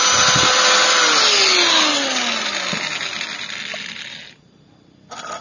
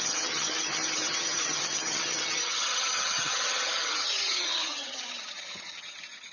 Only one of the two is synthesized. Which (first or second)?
second